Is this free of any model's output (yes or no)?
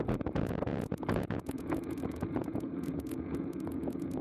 no